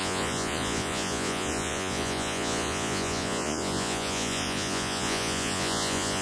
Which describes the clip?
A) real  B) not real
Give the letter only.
B